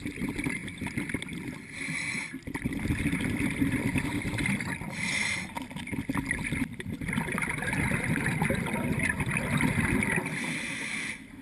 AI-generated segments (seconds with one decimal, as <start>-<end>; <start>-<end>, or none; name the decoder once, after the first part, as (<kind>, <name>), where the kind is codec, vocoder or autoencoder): none